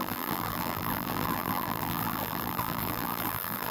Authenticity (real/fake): fake